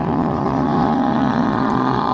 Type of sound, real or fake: fake